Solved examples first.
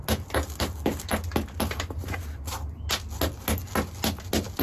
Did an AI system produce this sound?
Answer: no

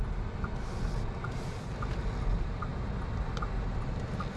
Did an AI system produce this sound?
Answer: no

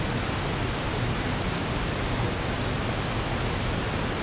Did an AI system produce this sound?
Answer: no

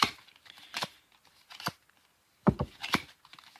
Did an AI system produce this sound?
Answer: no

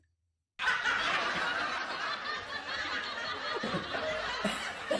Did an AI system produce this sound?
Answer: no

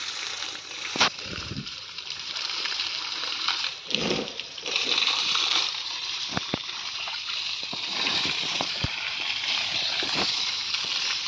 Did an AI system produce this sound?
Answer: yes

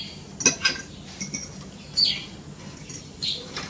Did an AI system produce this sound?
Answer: no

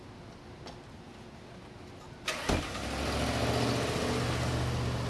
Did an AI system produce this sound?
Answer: no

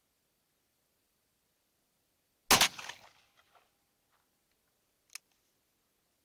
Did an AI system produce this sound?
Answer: no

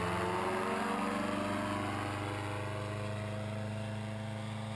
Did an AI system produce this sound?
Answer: no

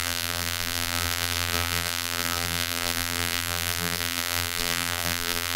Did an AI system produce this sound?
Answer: yes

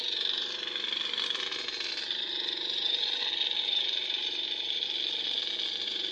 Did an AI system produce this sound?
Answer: no